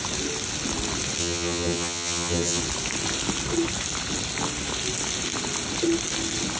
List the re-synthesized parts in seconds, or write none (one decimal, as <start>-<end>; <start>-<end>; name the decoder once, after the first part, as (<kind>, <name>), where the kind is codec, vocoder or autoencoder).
1.2-2.6 (vocoder, HiFi-GAN)